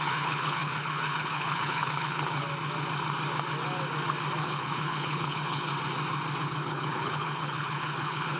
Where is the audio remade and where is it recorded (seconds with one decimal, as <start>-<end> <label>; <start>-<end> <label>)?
0.0-2.4 remade; 2.4-4.4 recorded; 4.4-5.7 remade; 5.7-6.4 recorded; 6.4-8.4 remade